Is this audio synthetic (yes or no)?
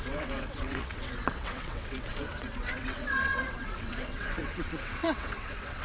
yes